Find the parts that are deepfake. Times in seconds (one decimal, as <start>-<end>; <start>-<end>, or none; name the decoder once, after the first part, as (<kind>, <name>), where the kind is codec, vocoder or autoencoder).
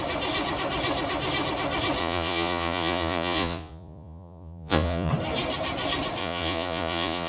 2.0-5.1 (vocoder, Vocos); 6.2-7.3